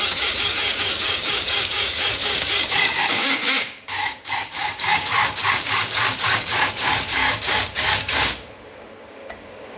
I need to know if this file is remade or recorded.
remade